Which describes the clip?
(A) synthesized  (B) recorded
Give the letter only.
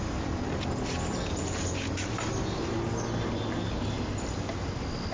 B